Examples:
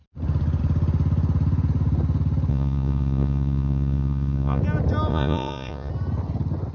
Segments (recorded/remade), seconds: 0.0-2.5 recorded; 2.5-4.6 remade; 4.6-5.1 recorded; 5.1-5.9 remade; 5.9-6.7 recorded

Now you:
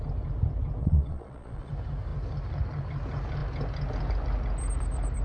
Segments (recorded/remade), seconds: 0.0-0.8 recorded; 0.8-1.7 remade; 1.7-5.2 recorded

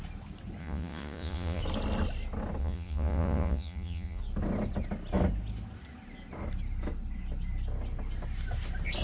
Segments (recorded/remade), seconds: 0.0-0.6 recorded; 0.6-1.6 remade; 1.6-2.6 recorded; 2.6-4.2 remade; 4.2-9.0 recorded